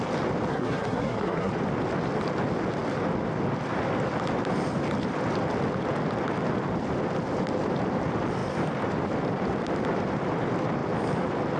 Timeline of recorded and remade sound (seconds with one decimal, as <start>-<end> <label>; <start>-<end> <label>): 0.0-0.5 recorded; 0.5-1.5 remade; 1.5-11.6 recorded